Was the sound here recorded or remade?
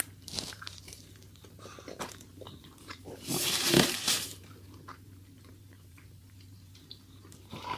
remade